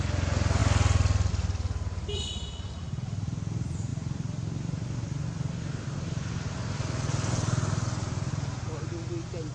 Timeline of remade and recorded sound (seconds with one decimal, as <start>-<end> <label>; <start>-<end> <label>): 0.0-9.5 recorded